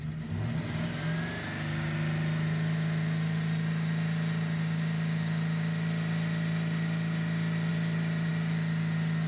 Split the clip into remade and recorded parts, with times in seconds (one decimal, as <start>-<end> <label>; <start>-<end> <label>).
0.0-7.7 recorded; 7.7-8.3 remade; 8.3-9.3 recorded